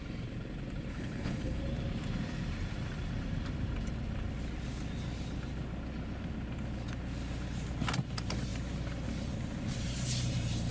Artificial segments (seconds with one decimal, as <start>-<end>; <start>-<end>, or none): 0.9-1.6